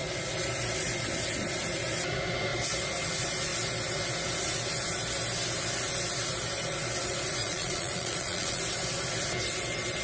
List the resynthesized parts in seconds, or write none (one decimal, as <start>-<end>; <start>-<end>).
7.4-8.6

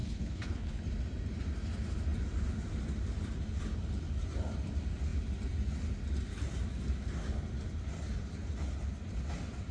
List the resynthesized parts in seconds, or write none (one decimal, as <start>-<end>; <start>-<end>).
0.0-0.8